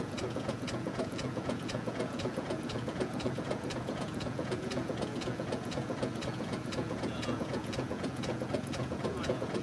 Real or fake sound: fake